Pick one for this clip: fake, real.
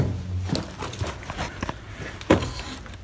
real